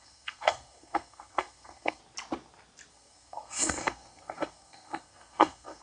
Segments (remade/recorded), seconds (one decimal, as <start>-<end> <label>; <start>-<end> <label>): 0.0-2.0 remade; 2.0-2.9 recorded; 2.9-5.8 remade